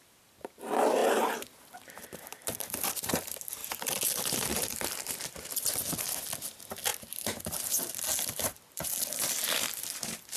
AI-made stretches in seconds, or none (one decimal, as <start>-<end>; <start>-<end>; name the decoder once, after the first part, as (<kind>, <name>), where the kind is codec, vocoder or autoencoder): 0.0-10.4 (vocoder, BigVGAN v2)